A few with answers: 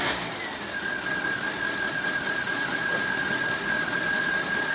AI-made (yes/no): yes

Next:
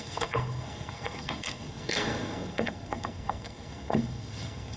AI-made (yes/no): yes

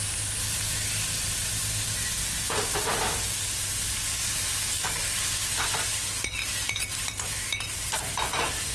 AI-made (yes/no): no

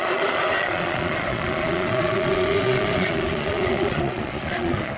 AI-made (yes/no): yes